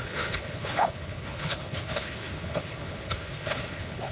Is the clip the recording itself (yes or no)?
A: no